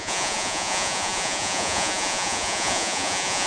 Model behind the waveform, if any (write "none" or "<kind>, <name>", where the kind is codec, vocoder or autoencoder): vocoder, Vocos